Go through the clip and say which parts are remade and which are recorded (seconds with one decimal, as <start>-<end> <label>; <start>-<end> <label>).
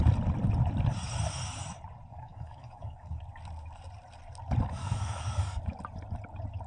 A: 0.0-2.1 recorded; 2.1-3.2 remade; 3.2-4.8 recorded; 4.8-5.6 remade; 5.6-6.7 recorded